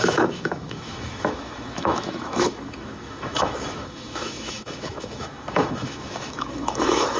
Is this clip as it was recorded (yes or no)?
no